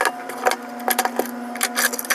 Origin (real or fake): real